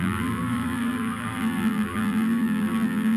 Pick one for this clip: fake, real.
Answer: fake